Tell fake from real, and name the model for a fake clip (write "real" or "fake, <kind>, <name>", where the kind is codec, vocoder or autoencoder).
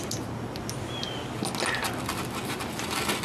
real